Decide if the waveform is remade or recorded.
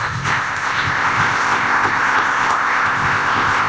remade